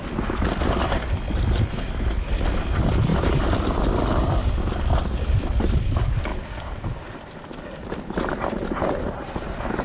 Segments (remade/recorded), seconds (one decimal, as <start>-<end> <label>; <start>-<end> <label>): 0.0-9.8 recorded